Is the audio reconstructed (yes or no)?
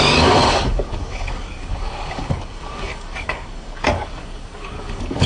yes